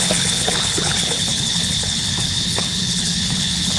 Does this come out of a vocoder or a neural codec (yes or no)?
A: yes